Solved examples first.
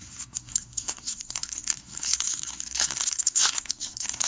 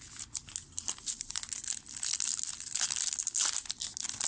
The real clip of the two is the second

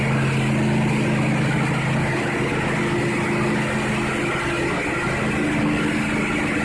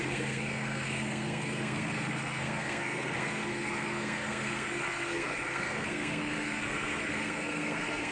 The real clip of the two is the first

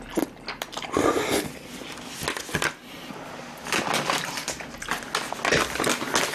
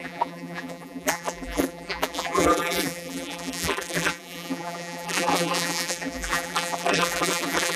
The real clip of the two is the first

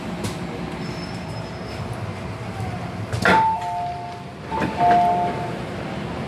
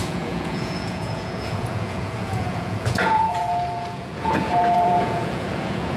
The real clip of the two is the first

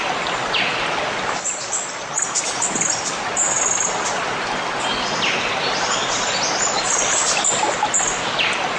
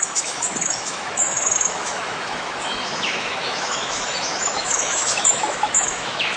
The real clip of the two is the first